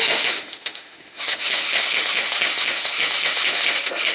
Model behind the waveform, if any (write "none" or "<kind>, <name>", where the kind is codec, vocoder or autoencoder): autoencoder, DAC-VAE